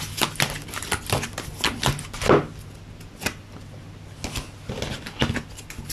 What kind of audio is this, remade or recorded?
recorded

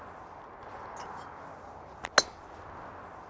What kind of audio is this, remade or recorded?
recorded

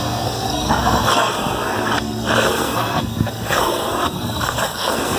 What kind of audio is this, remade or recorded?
remade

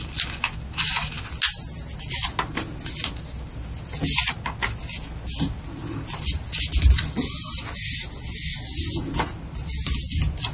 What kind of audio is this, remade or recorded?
recorded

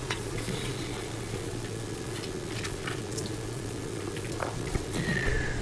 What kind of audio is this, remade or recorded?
remade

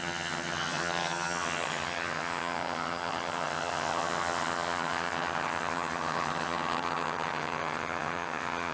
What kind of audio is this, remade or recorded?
remade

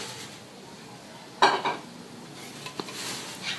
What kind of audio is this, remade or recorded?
recorded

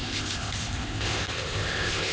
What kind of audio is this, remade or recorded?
remade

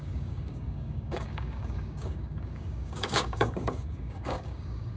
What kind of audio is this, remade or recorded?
remade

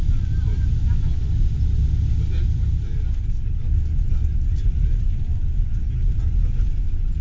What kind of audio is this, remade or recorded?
recorded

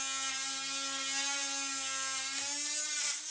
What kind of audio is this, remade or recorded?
recorded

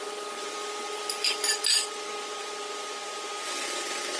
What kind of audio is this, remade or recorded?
recorded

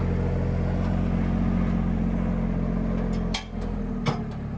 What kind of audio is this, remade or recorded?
recorded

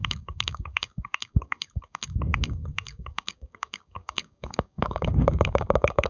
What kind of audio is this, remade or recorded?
remade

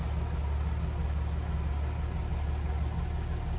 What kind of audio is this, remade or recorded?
recorded